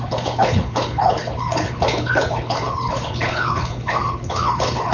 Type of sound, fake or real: fake